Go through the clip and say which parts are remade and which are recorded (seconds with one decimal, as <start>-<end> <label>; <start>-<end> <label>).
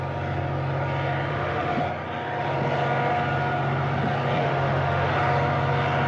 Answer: 0.0-1.3 recorded; 1.3-1.8 remade; 1.8-4.4 recorded; 4.4-5.1 remade; 5.1-6.1 recorded